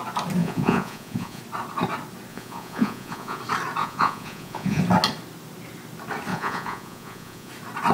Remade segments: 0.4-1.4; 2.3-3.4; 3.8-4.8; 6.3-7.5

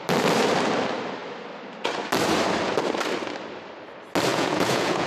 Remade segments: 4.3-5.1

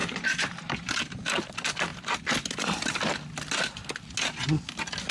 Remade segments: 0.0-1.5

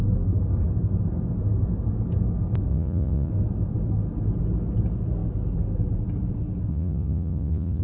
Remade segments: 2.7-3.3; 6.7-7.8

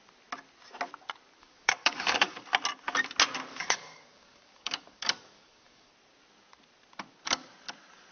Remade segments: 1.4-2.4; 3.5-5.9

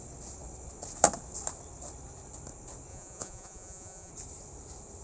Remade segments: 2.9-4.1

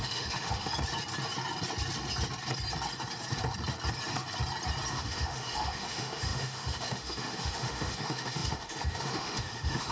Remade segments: 0.0-0.7; 4.9-9.9

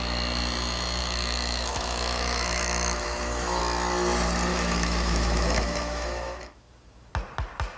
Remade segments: 1.0-3.6; 4.5-7.1